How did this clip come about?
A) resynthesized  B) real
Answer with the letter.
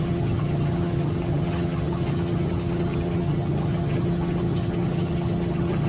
A